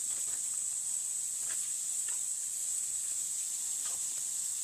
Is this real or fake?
real